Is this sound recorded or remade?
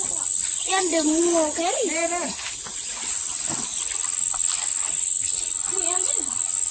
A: recorded